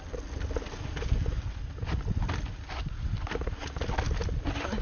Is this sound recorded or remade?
recorded